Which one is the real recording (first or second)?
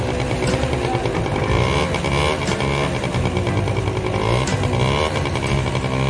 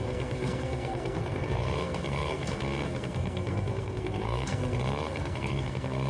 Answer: first